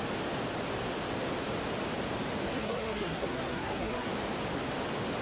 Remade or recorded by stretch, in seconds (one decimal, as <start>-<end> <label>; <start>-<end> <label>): 0.0-2.5 recorded; 2.5-4.1 remade; 4.1-5.2 recorded